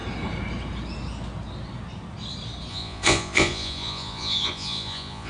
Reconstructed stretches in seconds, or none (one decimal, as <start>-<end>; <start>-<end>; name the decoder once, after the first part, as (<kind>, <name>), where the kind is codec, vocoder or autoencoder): 2.7-5.3 (vocoder, Vocos)